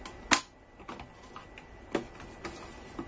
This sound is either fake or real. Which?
real